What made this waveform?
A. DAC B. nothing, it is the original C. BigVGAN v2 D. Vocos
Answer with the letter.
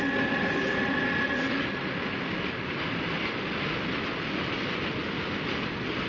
B